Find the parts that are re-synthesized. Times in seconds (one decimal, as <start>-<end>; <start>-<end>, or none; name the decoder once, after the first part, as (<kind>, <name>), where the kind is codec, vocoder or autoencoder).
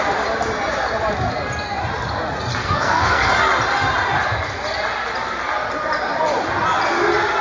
2.6-3.3 (codec, SNAC)